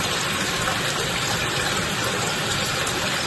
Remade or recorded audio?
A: remade